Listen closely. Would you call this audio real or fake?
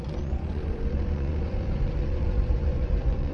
fake